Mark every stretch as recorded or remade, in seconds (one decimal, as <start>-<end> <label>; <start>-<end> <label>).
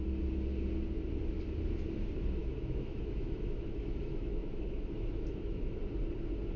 0.0-2.4 recorded; 2.4-5.8 remade; 5.8-6.6 recorded